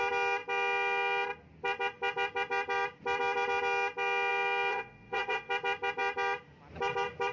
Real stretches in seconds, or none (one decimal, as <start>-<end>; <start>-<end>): 0.0-4.7; 5.5-7.3